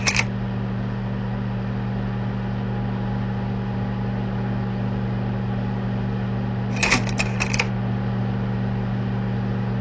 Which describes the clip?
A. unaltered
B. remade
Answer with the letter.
A